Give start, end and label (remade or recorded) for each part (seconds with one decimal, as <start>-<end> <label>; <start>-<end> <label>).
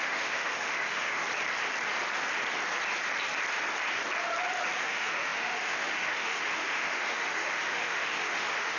0.0-1.2 remade; 1.2-4.8 recorded; 4.8-8.8 remade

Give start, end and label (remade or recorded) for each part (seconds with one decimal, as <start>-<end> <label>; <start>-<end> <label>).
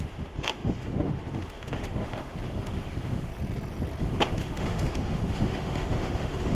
0.0-3.3 remade; 3.3-4.0 recorded; 4.0-6.5 remade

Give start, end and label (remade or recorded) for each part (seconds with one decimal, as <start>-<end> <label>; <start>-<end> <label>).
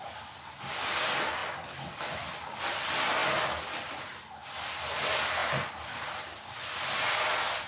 0.0-7.7 recorded